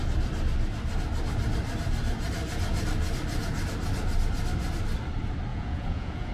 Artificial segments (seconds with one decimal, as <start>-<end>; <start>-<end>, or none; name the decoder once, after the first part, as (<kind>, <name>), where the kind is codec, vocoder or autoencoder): 5.5-6.3 (vocoder, Vocos)